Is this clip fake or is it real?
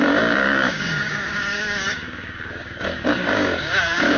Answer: fake